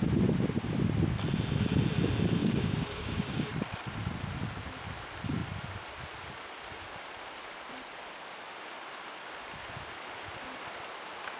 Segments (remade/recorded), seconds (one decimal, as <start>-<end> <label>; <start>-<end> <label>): 0.0-2.4 recorded; 2.4-3.5 remade; 3.5-11.4 recorded